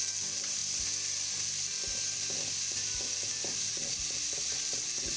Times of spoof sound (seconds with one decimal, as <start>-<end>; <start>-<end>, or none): none